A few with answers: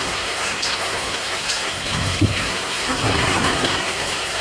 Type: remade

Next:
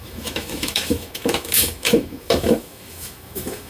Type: remade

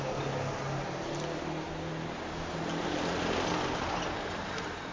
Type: recorded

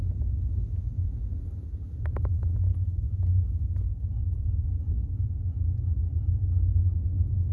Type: recorded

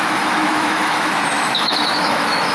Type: remade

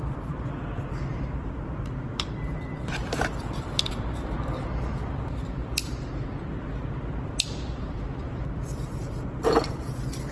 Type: remade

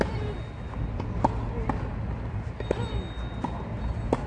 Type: recorded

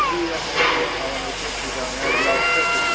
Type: recorded